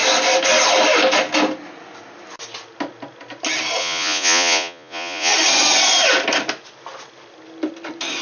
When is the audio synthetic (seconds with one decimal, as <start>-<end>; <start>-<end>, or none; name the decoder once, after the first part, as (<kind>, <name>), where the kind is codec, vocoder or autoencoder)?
3.8-5.3 (vocoder, Vocos)

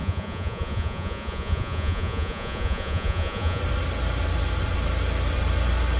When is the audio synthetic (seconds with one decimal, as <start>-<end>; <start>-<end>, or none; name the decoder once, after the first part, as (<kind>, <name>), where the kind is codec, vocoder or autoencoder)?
0.0-3.6 (vocoder, Vocos)

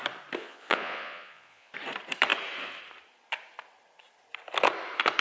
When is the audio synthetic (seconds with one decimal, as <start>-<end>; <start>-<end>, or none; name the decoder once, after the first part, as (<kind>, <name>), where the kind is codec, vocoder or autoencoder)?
0.4-1.7 (vocoder, Vocos)

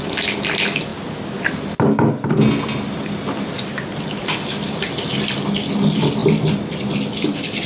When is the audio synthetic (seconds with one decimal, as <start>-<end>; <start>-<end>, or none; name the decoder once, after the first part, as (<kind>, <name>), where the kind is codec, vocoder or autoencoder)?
none

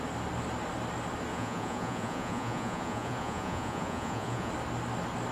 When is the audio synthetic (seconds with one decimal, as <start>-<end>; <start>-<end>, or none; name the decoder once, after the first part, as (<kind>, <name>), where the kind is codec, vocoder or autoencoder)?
1.3-4.5 (vocoder, Vocos)

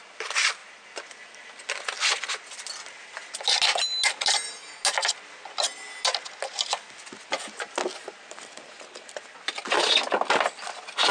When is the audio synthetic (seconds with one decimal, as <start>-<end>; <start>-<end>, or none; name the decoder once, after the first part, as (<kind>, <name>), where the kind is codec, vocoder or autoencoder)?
none

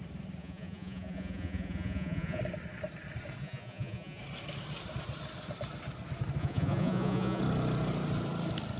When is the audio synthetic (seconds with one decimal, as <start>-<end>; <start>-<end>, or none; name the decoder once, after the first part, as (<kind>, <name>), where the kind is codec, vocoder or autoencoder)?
0.4-2.4 (vocoder, Vocos); 3.4-4.2; 6.4-7.4